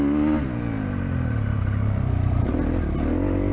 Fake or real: real